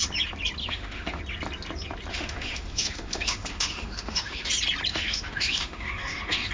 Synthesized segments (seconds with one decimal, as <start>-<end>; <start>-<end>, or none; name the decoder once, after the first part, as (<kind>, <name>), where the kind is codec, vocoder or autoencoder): 0.6-1.2 (autoencoder, DAC-VAE); 2.1-4.5; 4.9-6.5